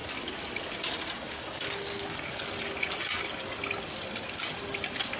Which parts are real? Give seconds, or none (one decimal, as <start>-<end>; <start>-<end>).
0.0-3.1